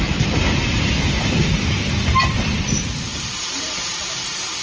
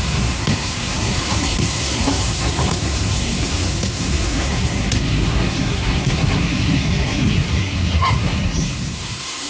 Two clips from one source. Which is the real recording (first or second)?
first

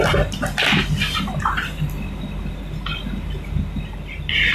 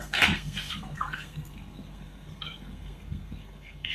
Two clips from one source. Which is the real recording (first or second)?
first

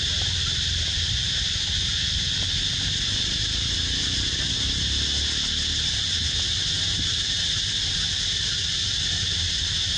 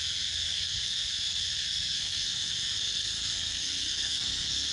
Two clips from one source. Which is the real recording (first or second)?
first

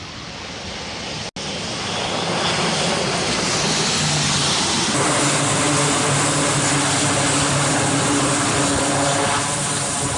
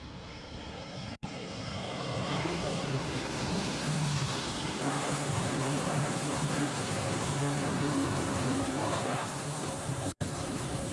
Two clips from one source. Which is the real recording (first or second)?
first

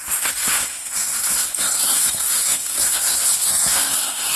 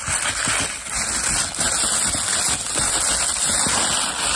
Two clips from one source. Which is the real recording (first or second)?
second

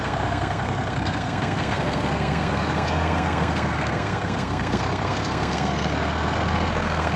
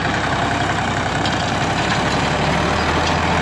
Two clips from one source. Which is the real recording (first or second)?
second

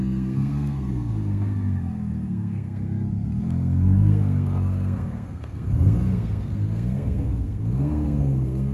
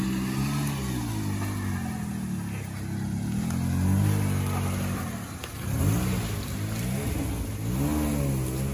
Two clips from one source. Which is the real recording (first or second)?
second